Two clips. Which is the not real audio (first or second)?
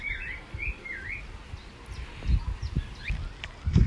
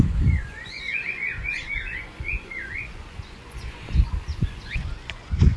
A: second